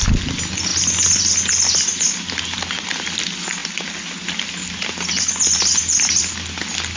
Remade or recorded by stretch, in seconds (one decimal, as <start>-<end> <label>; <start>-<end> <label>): 0.0-7.0 recorded